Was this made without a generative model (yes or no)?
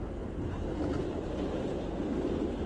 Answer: yes